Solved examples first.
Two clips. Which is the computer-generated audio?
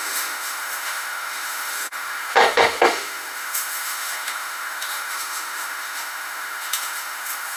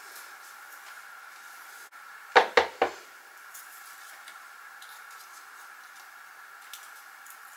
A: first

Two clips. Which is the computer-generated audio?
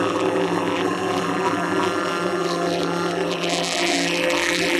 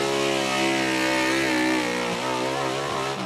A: first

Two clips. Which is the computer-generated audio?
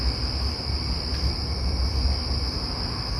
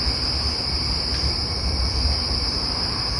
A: second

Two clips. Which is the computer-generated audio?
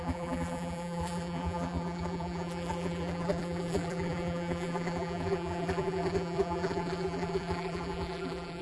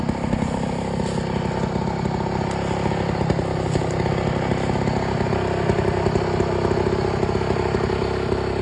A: first